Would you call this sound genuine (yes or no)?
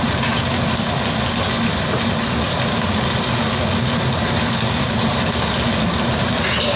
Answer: yes